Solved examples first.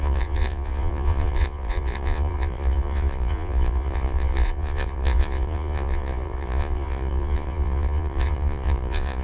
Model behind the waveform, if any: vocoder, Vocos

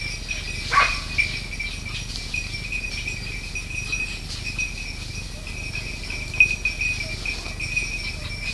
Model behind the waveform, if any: none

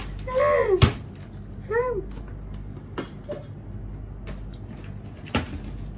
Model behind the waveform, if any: none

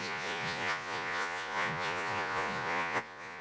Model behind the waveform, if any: vocoder, Vocos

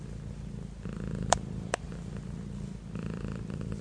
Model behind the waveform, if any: none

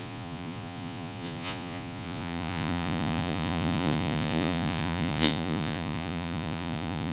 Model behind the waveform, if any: vocoder, Vocos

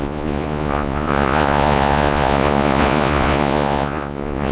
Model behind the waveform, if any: vocoder, Vocos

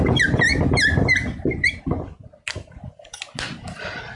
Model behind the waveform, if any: none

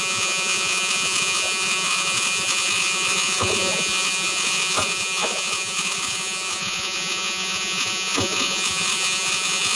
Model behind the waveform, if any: vocoder, Vocos